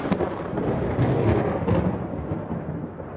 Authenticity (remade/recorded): recorded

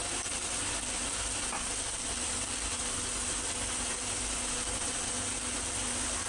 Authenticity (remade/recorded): recorded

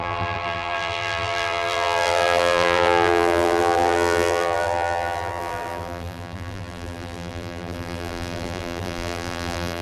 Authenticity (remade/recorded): remade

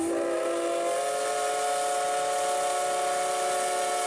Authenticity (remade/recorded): recorded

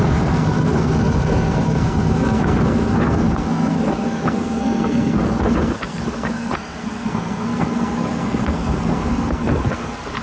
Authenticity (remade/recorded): remade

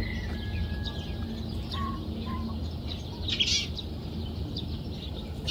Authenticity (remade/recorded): recorded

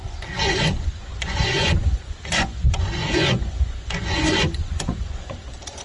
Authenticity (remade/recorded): remade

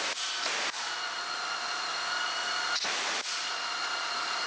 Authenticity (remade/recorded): recorded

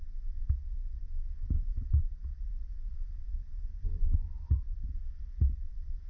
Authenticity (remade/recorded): recorded